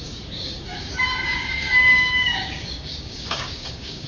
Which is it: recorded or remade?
remade